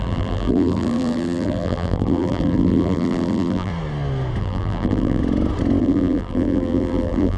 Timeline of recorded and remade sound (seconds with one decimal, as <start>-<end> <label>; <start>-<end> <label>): 0.0-3.7 remade; 3.7-4.4 recorded; 4.4-5.2 remade; 5.2-5.8 recorded; 5.8-7.4 remade